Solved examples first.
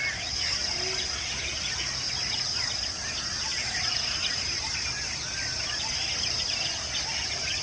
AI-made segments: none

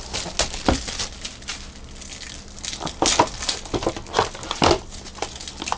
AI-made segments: none

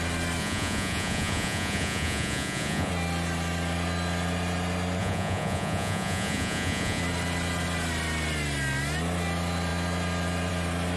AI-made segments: 0.4-2.9; 5.0-7.0

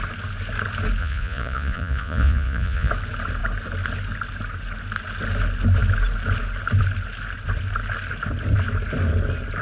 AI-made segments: 1.0-2.9